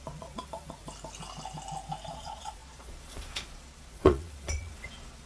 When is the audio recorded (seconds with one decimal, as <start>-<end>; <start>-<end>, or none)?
0.8-2.1